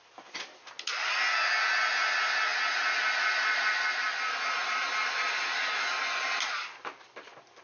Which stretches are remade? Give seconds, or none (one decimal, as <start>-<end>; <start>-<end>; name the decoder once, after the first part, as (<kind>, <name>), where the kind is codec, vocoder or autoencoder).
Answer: 4.6-5.6 (vocoder, BigVGAN v2)